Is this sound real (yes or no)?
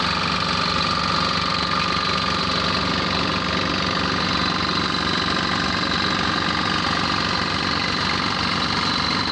yes